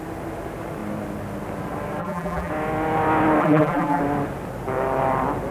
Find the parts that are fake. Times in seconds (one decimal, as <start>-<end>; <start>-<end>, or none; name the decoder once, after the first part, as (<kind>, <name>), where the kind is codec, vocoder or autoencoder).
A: 2.0-2.5 (vocoder, BigVGAN v2); 3.4-4.0